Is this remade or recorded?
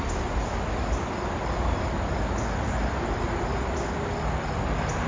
recorded